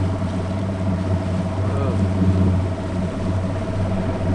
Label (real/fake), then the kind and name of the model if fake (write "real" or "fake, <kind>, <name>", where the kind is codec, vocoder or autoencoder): real